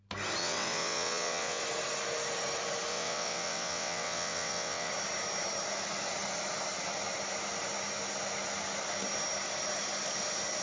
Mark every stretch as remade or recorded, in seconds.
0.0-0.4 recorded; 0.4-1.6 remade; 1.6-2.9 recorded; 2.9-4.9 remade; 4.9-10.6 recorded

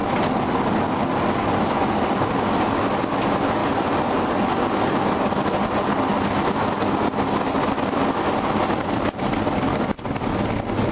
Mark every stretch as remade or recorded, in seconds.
0.0-10.9 recorded

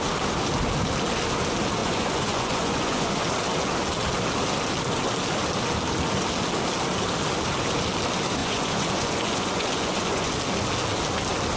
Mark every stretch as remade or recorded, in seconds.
0.0-1.8 recorded; 1.8-3.2 remade; 3.2-8.4 recorded; 8.4-10.3 remade; 10.3-11.6 recorded

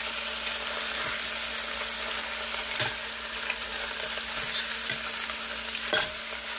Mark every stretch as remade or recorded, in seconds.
0.0-6.6 recorded

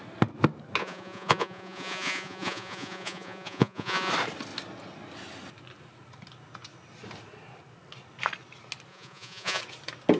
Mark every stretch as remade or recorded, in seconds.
0.0-0.8 recorded; 0.8-4.1 remade; 4.1-8.9 recorded; 8.9-9.6 remade; 9.6-10.2 recorded

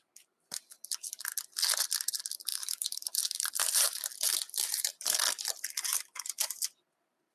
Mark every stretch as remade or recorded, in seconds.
0.0-2.5 recorded; 2.5-3.5 remade; 3.5-4.7 recorded; 4.7-5.2 remade; 5.2-7.3 recorded

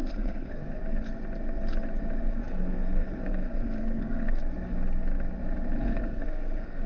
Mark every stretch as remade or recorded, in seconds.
0.0-0.8 remade; 0.8-2.3 recorded; 2.3-4.4 remade; 4.4-5.8 recorded; 5.8-6.9 remade